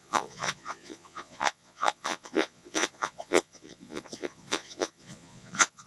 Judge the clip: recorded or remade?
remade